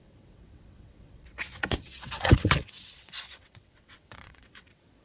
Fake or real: fake